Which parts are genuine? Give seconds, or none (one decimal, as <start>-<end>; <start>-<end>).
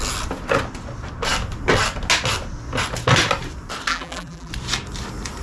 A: 0.0-3.9; 4.5-5.4